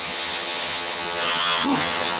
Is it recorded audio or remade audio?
remade